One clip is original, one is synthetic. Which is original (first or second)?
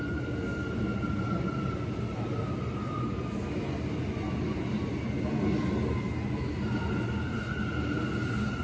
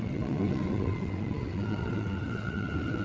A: first